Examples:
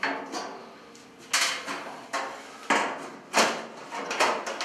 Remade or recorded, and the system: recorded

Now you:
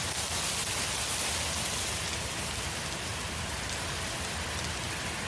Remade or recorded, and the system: recorded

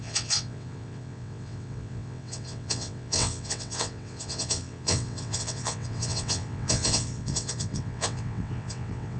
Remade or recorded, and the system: remade, vocoder, WaveNeXt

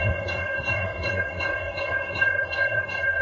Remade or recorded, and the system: remade, codec, SNAC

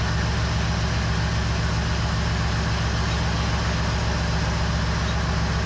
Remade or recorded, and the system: recorded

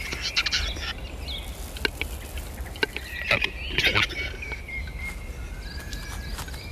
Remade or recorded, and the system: recorded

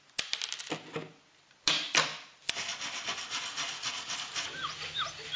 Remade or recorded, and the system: recorded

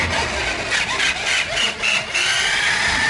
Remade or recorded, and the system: recorded